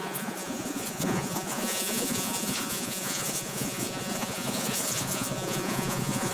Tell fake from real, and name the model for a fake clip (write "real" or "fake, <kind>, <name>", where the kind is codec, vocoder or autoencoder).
fake, vocoder, Vocos